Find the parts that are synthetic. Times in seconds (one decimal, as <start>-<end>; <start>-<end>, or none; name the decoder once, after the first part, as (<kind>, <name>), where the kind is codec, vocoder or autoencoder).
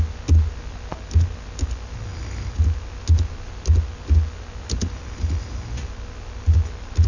none